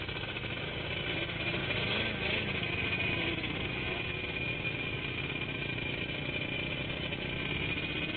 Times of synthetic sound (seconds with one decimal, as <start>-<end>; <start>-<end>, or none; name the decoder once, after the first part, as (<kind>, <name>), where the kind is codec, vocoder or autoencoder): none